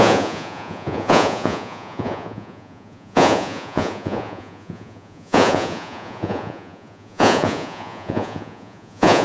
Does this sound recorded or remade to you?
remade